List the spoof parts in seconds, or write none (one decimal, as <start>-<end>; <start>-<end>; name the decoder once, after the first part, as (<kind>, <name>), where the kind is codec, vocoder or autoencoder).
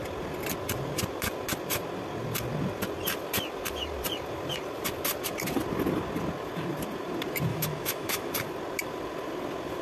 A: 7.5-8.3 (autoencoder, DAC-VAE)